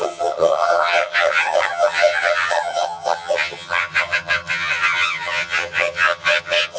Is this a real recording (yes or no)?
no